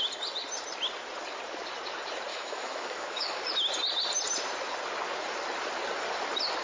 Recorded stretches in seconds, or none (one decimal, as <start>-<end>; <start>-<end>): 0.0-2.3; 3.4-6.6